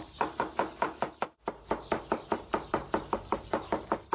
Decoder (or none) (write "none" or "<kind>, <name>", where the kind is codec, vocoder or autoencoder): none